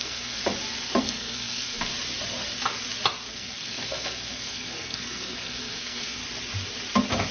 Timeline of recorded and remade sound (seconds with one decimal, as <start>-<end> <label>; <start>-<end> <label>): 0.0-0.4 remade; 0.4-1.0 recorded; 1.0-1.9 remade; 1.9-3.3 recorded; 3.3-6.2 remade; 6.2-7.3 recorded